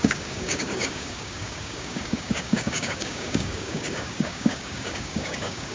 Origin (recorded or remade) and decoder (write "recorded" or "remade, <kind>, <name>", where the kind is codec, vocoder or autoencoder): remade, codec, DAC